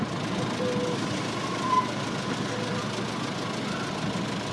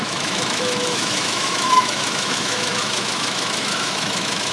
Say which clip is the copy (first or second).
second